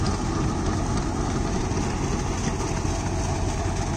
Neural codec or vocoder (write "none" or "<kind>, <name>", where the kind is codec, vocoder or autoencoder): none